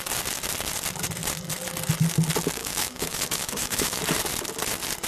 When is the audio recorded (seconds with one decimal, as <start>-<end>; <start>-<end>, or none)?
0.0-2.6; 4.0-5.1